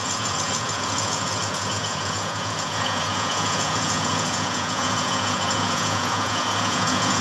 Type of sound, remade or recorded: remade